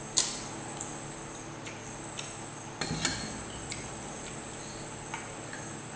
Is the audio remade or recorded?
recorded